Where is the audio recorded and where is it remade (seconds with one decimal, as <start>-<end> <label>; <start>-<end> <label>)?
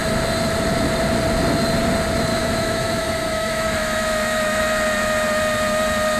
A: 0.0-2.3 recorded; 2.3-4.6 remade; 4.6-6.2 recorded